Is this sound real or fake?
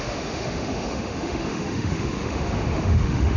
fake